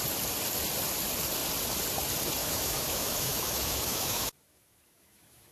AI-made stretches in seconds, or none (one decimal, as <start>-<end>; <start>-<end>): 2.4-5.5